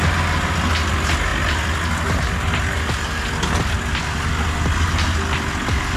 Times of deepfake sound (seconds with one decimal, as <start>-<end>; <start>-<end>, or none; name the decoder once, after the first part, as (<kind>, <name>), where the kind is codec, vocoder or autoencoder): none